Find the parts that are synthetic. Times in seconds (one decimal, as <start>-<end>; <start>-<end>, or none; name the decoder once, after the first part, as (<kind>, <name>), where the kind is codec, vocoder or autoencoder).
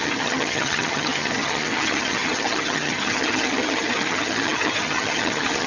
0.0-5.7 (vocoder, HiFi-GAN)